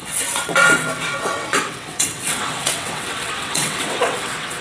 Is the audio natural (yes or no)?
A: no